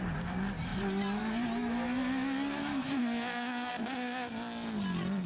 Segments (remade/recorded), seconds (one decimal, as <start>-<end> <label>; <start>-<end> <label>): 0.0-2.6 recorded; 2.6-3.7 remade; 3.7-5.3 recorded